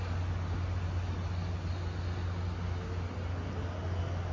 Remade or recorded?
recorded